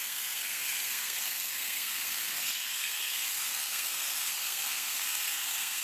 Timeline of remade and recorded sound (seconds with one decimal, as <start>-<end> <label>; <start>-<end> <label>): 0.0-5.8 remade